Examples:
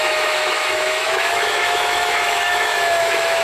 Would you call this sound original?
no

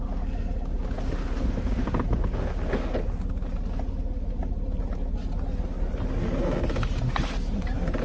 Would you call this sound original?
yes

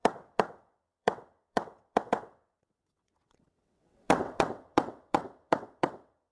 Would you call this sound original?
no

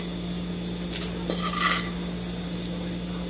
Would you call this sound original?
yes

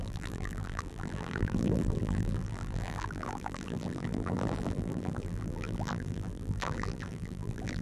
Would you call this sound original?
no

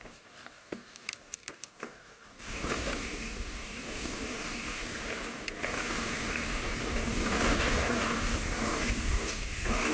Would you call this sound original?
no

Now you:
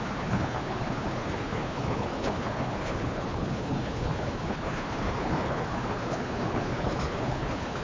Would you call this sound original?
no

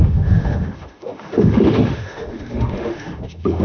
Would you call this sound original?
no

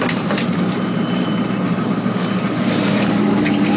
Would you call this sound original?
no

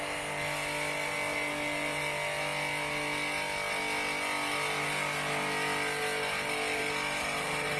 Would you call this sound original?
yes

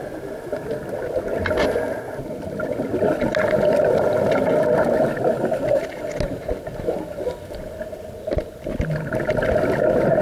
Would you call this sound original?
yes